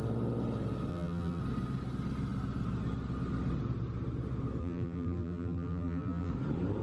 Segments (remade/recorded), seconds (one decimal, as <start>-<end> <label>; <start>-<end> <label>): 0.0-0.9 recorded; 0.9-1.4 remade; 1.4-4.6 recorded; 4.6-6.3 remade; 6.3-6.8 recorded